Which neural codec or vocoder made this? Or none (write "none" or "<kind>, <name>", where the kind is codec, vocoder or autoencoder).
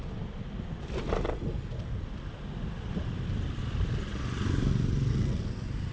none